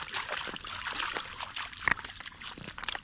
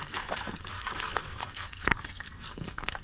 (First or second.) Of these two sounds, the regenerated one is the second